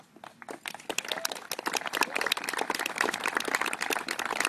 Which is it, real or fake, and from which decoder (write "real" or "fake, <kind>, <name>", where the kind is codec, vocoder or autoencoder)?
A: real